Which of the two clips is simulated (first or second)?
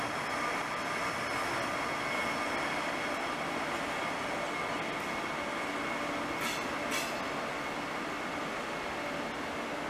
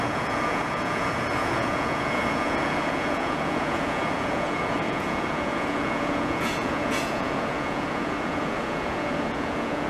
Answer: second